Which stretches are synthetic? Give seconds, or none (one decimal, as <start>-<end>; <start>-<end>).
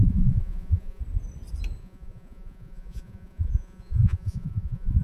0.0-1.0; 1.8-5.0